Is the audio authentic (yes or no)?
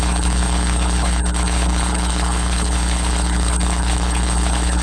no